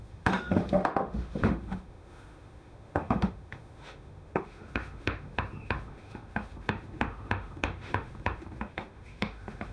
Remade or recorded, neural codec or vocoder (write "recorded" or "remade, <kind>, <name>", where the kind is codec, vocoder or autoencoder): remade, autoencoder, DAC-VAE